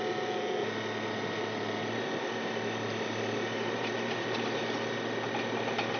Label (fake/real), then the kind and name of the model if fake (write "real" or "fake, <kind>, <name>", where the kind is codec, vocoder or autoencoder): real